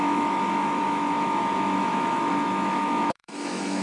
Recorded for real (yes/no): no